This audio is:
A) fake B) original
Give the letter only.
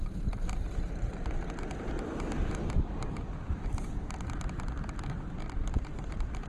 B